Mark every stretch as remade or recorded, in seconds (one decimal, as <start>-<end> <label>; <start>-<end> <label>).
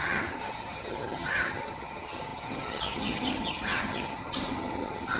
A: 0.0-5.2 remade